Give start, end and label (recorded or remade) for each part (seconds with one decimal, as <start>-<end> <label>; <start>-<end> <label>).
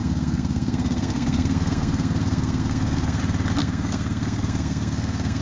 0.0-3.2 remade; 3.2-3.6 recorded; 3.6-5.4 remade